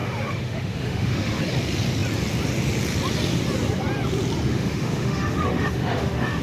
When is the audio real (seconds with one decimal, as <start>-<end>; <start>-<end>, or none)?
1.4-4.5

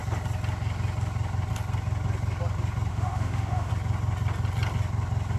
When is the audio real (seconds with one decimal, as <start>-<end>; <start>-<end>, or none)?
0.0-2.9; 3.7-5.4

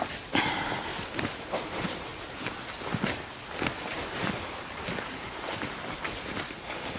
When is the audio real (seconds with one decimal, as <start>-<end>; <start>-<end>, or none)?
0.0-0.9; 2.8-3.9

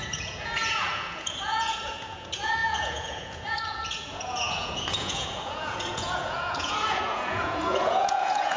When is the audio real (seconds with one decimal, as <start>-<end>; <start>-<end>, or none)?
none

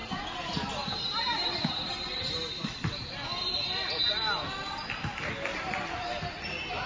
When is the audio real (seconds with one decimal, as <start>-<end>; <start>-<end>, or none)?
0.0-6.9

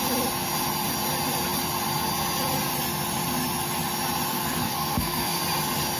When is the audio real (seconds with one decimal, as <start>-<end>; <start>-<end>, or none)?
0.0-4.3; 5.4-6.0

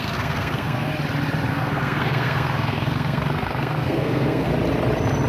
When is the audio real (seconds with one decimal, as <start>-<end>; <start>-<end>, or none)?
0.9-1.5; 4.5-5.3